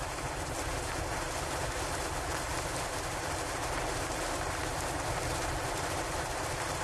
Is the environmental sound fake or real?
real